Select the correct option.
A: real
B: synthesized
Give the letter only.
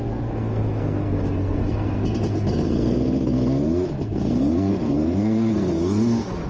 B